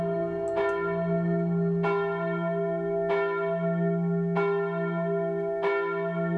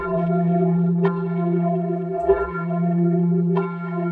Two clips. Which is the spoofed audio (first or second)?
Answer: second